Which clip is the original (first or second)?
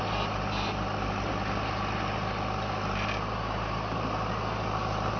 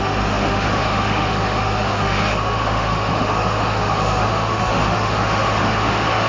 first